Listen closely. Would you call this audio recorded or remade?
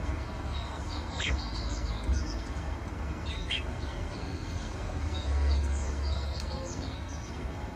remade